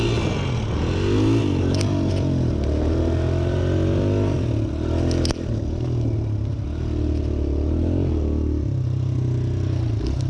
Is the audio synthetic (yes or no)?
no